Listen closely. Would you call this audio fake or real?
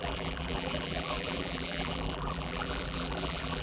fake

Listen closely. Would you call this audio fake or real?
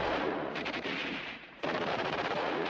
fake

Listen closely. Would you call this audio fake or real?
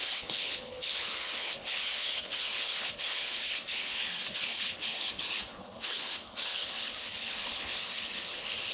fake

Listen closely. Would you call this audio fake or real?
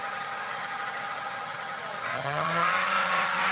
fake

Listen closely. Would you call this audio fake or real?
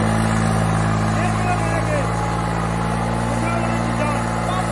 real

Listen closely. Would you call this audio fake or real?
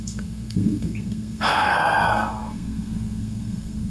fake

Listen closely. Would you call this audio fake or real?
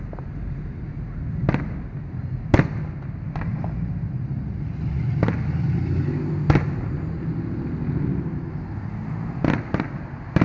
real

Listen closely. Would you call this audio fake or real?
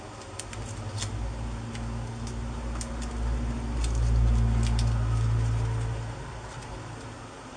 real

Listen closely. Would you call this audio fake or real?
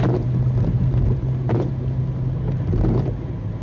real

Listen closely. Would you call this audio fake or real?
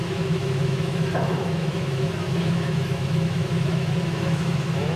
fake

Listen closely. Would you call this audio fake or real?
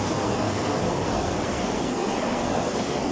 fake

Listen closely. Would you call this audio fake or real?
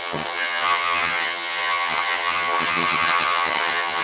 fake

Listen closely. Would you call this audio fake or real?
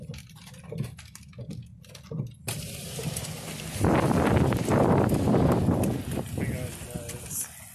real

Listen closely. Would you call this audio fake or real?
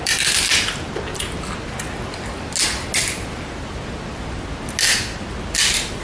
real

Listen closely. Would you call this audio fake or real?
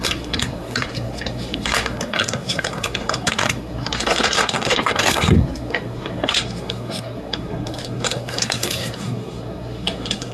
fake